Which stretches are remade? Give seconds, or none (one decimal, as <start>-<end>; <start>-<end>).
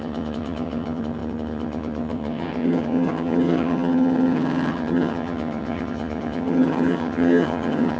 0.0-8.0